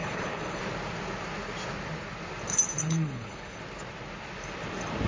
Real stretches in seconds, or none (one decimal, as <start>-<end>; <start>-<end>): 0.6-2.8; 3.6-5.1

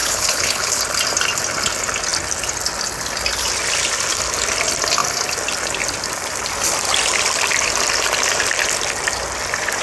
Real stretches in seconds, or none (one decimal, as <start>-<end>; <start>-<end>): 0.8-9.8

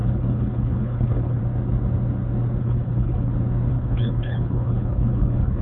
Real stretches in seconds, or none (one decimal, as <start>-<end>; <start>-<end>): 1.4-2.6; 3.3-3.7

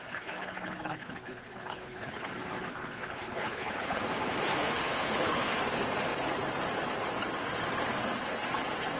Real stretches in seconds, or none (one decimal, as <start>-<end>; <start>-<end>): 2.3-2.7; 4.0-4.5; 5.5-9.0